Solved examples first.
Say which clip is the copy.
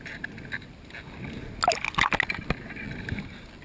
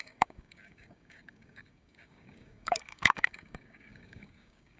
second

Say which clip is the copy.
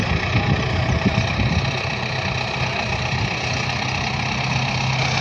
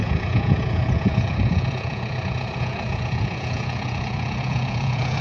second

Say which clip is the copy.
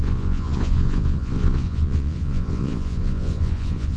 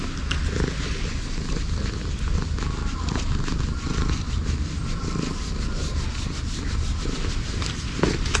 first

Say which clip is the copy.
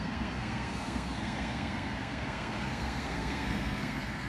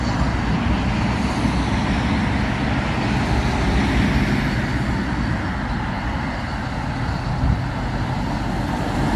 first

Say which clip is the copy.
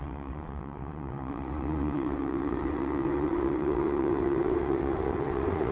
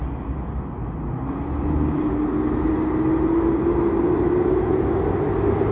first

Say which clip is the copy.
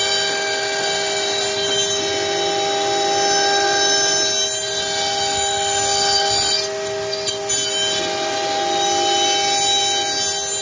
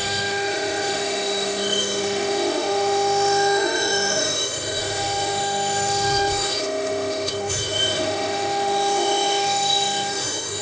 second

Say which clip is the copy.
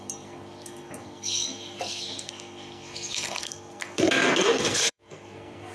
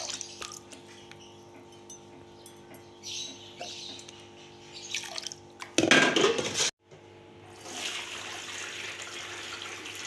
first